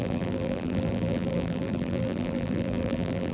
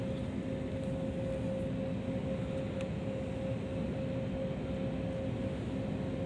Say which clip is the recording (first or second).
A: second